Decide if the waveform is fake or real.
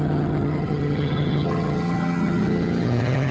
fake